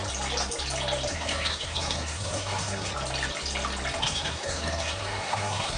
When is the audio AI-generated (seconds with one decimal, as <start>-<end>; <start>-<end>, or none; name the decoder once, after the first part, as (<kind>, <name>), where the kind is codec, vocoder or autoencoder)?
1.1-2.9 (codec, SNAC); 4.0-5.8